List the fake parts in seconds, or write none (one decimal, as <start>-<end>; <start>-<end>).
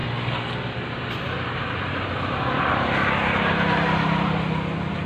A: none